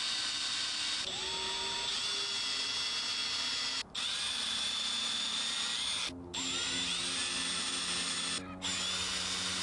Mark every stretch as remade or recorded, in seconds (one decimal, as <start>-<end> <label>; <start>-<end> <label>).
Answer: 0.0-9.6 recorded